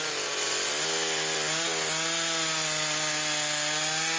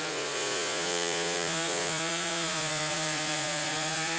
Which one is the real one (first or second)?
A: first